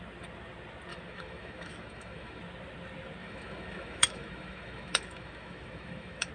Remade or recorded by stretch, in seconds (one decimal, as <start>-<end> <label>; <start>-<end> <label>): 0.0-0.9 recorded; 0.9-2.4 remade; 2.4-3.2 recorded; 3.2-6.3 remade